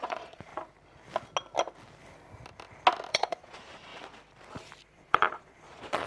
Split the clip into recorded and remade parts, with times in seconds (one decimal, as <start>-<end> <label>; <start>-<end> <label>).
0.0-0.5 remade; 0.5-3.1 recorded; 3.1-3.9 remade; 3.9-4.9 recorded; 4.9-6.1 remade